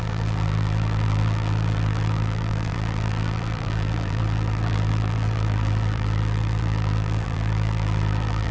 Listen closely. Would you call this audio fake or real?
fake